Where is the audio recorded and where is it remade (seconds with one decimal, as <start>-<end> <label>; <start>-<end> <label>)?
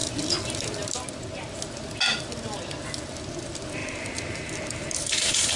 0.0-3.8 recorded; 3.8-5.6 remade